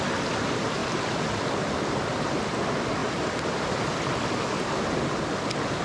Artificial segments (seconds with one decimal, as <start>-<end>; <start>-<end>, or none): 0.8-1.5; 3.0-4.1